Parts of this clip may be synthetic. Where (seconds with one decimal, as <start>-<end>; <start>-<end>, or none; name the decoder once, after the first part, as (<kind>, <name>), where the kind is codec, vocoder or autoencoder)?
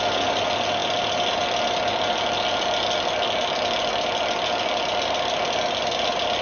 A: none